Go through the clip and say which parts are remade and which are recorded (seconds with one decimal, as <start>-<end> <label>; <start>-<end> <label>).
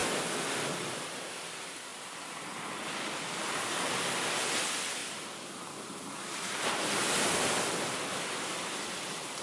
0.0-1.9 recorded; 1.9-4.2 remade; 4.2-5.0 recorded; 5.0-9.0 remade; 9.0-9.4 recorded